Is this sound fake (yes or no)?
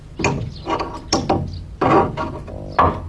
no